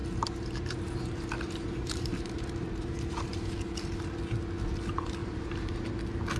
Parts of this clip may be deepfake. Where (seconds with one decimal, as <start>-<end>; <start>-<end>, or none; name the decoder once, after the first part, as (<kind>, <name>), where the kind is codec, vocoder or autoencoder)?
0.0-2.9 (vocoder, BigVGAN v2); 5.2-5.9